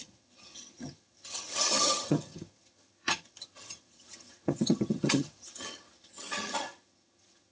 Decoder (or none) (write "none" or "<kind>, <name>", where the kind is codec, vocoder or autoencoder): vocoder, HiFi-GAN